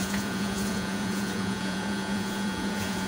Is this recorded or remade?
remade